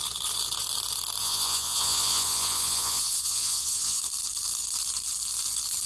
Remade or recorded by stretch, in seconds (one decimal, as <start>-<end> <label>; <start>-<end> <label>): 0.0-1.2 recorded; 1.2-4.0 remade; 4.0-5.9 recorded